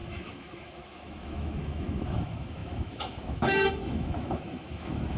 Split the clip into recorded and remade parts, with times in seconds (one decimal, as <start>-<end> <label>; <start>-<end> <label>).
0.0-5.2 remade